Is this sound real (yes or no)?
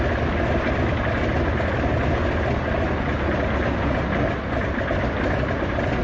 yes